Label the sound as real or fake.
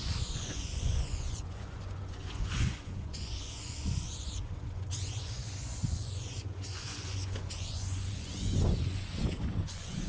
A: fake